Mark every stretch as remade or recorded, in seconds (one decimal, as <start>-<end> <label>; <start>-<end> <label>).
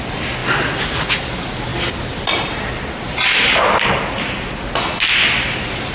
0.0-1.7 recorded; 1.7-3.3 remade; 3.3-5.9 recorded